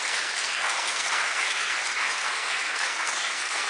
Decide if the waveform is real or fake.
fake